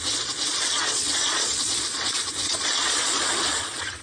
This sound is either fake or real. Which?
fake